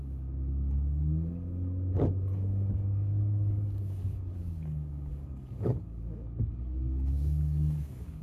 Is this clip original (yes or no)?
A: no